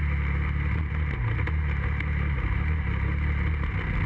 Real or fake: real